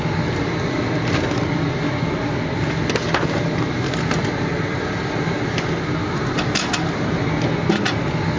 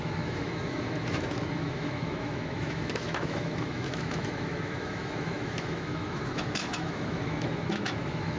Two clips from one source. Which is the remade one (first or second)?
second